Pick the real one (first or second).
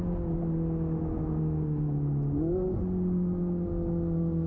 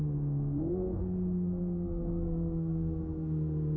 first